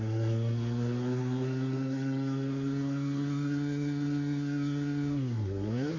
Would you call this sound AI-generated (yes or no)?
yes